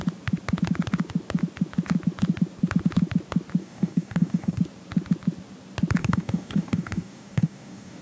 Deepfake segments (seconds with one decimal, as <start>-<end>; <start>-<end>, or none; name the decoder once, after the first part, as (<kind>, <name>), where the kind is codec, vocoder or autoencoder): 3.6-4.6 (codec, DAC); 6.0-8.0